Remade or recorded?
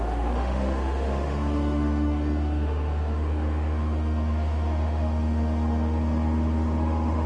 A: remade